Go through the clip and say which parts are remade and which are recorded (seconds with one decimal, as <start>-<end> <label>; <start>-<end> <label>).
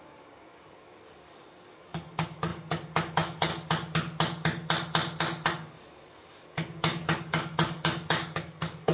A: 0.0-3.5 remade; 3.5-5.5 recorded; 5.5-8.9 remade